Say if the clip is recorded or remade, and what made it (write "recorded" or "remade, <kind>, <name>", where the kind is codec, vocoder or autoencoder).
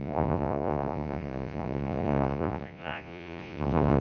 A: remade, vocoder, Vocos